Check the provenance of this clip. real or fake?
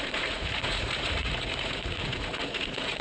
fake